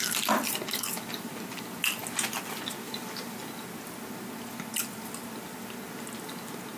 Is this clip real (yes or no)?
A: yes